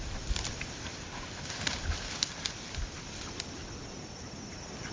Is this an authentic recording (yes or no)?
yes